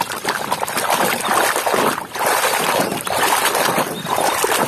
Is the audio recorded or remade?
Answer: remade